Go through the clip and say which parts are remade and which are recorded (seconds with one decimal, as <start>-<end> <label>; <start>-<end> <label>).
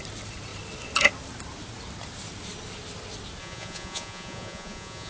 0.0-3.4 recorded; 3.4-5.1 remade